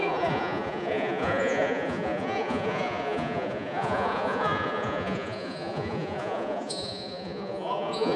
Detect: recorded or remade remade